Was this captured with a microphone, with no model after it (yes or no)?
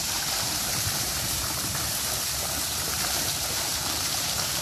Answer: no